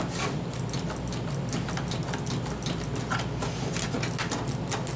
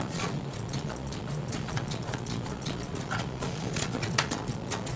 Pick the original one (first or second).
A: first